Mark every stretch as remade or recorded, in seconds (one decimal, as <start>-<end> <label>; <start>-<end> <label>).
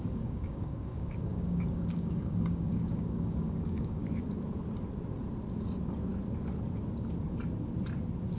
0.0-4.0 remade; 4.0-8.4 recorded